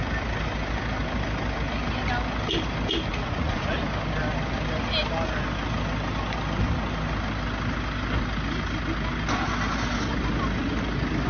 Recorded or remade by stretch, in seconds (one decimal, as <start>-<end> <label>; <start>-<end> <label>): 0.0-3.1 recorded; 3.1-3.8 remade; 3.8-11.3 recorded